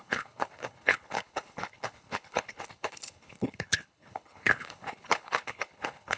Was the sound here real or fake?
fake